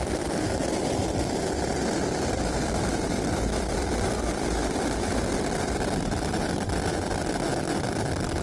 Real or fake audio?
fake